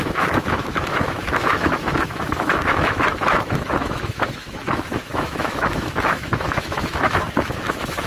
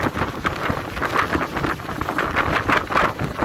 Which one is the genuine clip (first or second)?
second